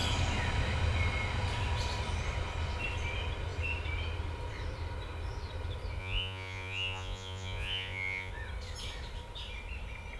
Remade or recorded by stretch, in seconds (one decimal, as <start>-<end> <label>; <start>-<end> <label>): 0.0-6.0 recorded; 6.0-8.3 remade; 8.3-10.2 recorded